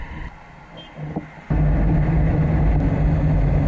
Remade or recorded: recorded